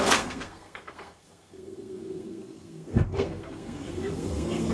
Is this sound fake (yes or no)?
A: yes